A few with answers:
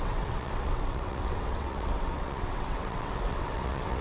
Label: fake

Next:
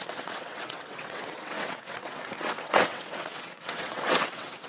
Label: fake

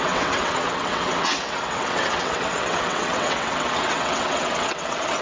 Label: fake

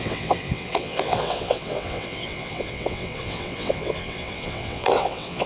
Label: fake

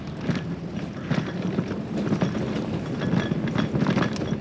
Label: real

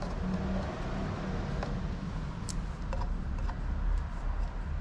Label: real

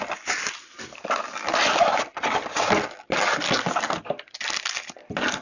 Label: real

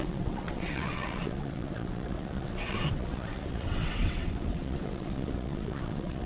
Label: fake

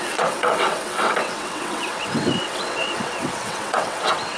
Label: fake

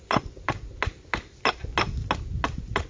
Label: real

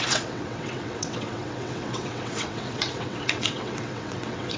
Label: fake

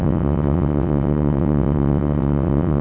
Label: fake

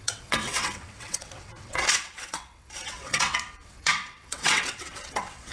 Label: fake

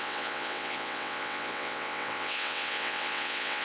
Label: fake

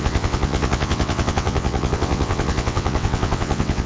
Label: fake